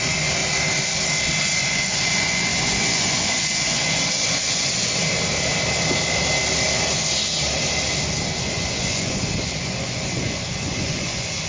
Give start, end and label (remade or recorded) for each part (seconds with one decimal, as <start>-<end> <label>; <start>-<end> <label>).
0.0-0.4 remade; 0.4-1.4 recorded; 1.4-5.0 remade; 5.0-8.4 recorded; 8.4-11.5 remade

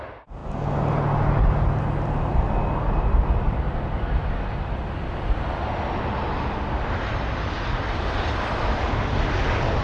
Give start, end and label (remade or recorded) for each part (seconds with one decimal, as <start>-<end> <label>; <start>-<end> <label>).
0.0-9.8 recorded

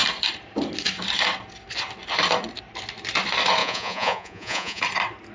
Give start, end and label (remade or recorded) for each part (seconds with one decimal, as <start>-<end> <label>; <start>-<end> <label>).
0.0-3.6 recorded; 3.6-4.8 remade; 4.8-5.3 recorded